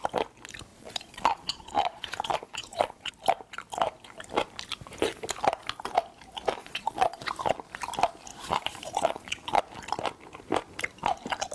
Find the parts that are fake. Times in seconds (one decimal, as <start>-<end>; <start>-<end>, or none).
0.7-3.1; 6.6-7.3; 8.3-9.6